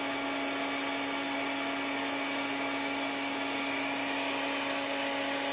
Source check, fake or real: real